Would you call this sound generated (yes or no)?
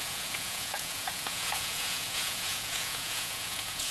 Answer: yes